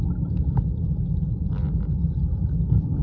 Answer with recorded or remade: recorded